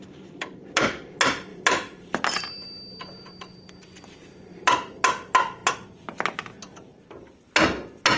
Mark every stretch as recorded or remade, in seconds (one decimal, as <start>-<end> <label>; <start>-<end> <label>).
0.0-1.5 recorded; 1.5-5.0 remade; 5.0-8.2 recorded